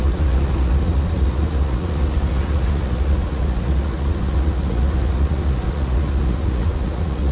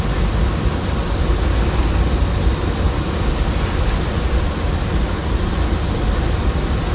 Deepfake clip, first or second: first